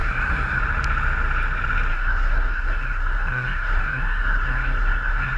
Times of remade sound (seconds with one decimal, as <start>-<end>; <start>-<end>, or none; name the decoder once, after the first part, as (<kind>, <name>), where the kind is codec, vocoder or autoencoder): 0.0-0.6 (codec, SNAC); 1.9-5.4